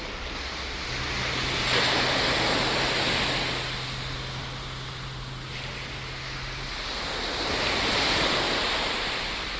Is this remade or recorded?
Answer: recorded